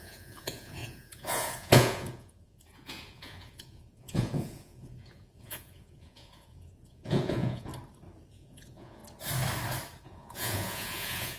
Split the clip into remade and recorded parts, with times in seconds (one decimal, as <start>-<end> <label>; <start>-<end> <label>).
0.0-7.7 remade; 7.7-8.3 recorded; 8.3-9.0 remade; 9.0-10.0 recorded; 10.0-11.4 remade